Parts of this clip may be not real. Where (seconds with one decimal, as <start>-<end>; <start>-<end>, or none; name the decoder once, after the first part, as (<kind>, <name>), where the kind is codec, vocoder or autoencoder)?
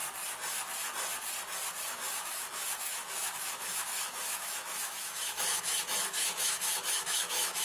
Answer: 1.8-7.6 (autoencoder, DAC-VAE)